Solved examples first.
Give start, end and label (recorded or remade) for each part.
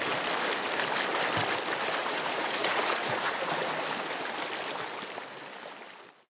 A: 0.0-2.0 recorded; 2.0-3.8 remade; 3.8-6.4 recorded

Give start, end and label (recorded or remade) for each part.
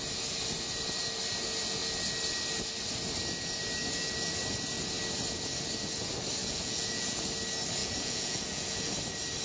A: 0.0-6.4 recorded; 6.4-7.2 remade; 7.2-7.8 recorded; 7.8-8.9 remade; 8.9-9.4 recorded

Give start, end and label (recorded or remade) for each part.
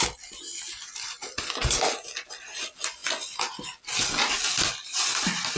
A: 0.0-5.6 recorded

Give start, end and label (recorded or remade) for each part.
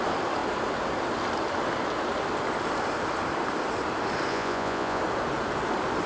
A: 0.0-4.3 recorded; 4.3-5.0 remade; 5.0-6.1 recorded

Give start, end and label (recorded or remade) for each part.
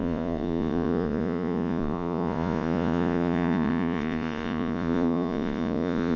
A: 0.0-6.2 remade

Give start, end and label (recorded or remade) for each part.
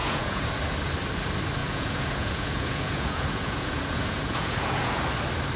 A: 0.0-0.5 remade; 0.5-1.6 recorded; 1.6-5.0 remade; 5.0-5.6 recorded